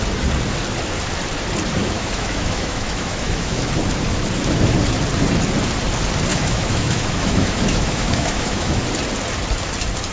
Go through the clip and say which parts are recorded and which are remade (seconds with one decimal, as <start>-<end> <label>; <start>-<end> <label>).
0.0-1.8 recorded; 1.8-3.7 remade; 3.7-6.3 recorded; 6.3-8.8 remade; 8.8-10.1 recorded